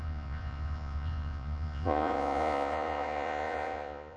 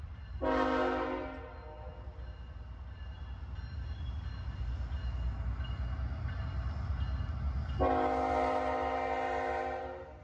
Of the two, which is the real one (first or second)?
second